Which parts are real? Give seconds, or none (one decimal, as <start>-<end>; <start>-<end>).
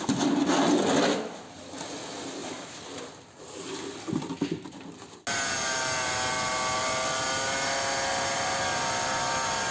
0.0-9.7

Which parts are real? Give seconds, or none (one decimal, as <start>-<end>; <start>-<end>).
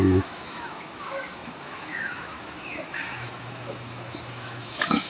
none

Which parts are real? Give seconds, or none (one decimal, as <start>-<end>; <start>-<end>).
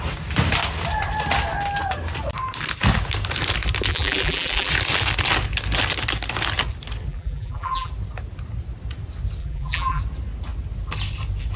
0.0-3.9; 4.7-7.1; 7.9-9.4; 10.0-11.6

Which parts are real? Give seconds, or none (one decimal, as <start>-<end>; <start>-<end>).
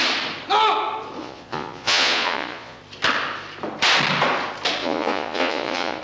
0.0-1.2; 2.8-4.8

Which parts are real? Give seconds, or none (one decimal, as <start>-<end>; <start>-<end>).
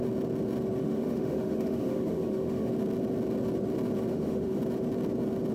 0.0-0.8; 2.7-4.1; 4.6-5.5